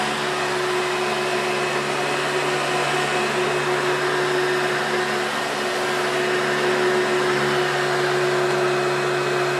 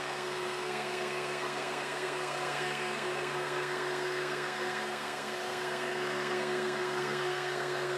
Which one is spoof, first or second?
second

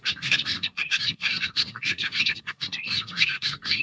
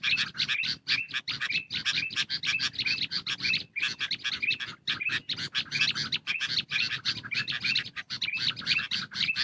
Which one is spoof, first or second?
first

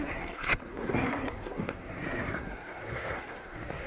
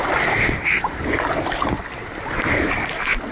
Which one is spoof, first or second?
first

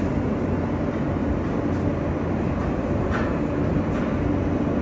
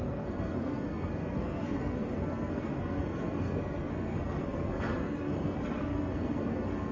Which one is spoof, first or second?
second